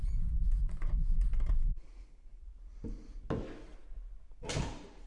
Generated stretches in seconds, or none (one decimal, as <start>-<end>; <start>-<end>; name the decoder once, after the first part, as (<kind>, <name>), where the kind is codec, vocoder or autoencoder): 0.0-1.2 (vocoder, Vocos)